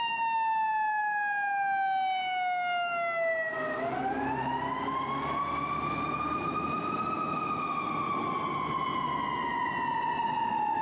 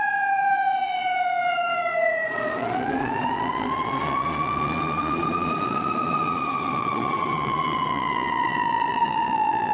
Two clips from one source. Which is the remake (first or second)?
second